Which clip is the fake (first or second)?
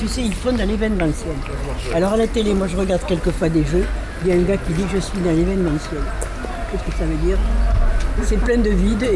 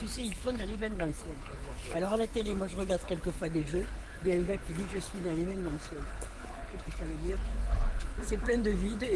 second